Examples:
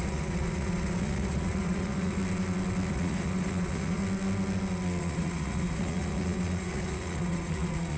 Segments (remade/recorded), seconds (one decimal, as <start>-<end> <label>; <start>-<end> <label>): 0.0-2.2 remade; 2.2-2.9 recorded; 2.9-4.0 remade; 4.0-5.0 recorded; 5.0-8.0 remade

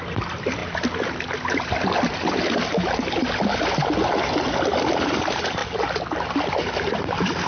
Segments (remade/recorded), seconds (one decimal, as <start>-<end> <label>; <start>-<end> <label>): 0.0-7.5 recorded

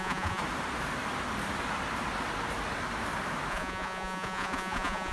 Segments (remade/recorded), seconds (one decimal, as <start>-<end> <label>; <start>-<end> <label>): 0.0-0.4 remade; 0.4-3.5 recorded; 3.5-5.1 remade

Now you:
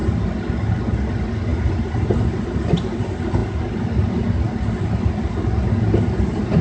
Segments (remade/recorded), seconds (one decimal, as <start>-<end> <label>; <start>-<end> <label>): 0.0-6.6 recorded

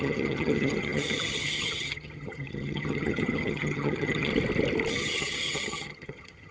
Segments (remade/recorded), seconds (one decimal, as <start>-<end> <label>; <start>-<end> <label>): 0.0-4.3 remade; 4.3-4.9 recorded; 4.9-6.5 remade

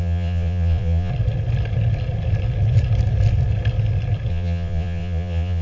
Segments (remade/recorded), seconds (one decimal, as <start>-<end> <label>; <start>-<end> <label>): 0.0-1.1 remade; 1.1-4.3 recorded; 4.3-5.6 remade